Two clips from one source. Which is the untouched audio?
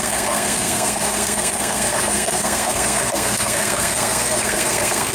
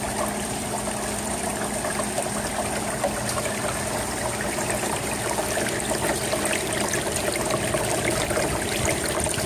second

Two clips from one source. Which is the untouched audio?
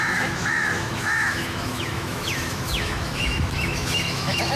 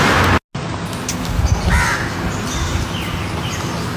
second